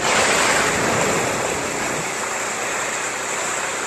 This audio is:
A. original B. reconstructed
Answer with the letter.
A